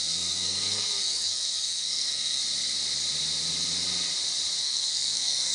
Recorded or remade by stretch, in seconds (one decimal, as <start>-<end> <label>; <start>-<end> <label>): 0.0-2.4 remade; 2.4-4.6 recorded; 4.6-5.5 remade